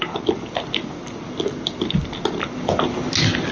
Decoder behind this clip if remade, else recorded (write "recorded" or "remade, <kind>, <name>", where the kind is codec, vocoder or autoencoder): recorded